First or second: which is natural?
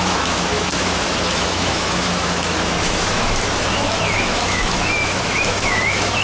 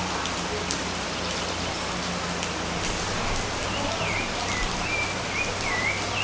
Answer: second